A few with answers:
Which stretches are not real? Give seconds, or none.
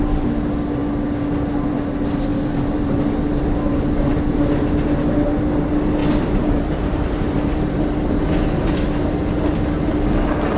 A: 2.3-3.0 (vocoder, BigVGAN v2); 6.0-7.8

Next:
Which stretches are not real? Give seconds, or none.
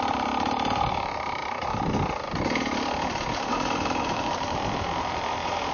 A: 0.0-1.4 (vocoder, BigVGAN v2); 3.5-5.7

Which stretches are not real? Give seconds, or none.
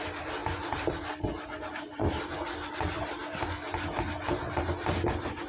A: 0.0-3.2 (vocoder, BigVGAN v2)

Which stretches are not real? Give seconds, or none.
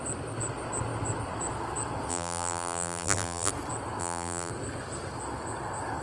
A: 2.1-3.5 (vocoder, BigVGAN v2); 4.0-4.5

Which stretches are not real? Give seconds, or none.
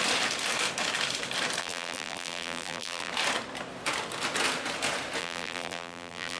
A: 1.6-3.1 (vocoder, BigVGAN v2); 5.2-6.4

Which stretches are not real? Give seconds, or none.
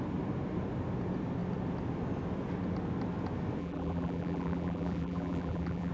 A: 3.6-5.9 (vocoder, BigVGAN v2)